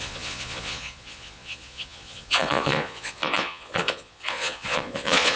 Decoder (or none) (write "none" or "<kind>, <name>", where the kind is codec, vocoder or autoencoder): vocoder, Vocos